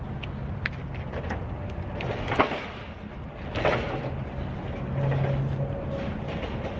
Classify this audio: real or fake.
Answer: real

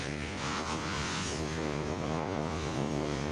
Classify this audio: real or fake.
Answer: fake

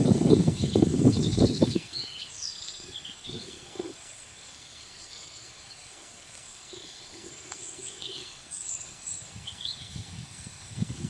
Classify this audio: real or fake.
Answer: fake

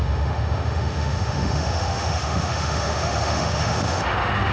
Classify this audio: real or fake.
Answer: fake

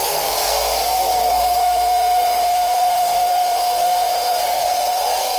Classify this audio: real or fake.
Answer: fake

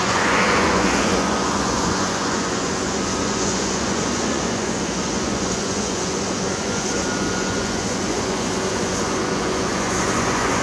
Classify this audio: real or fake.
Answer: fake